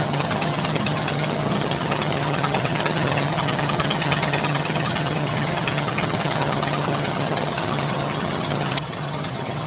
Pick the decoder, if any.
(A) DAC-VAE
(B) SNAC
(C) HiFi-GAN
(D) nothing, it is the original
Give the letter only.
C